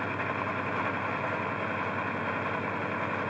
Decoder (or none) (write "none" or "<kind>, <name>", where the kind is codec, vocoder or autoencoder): none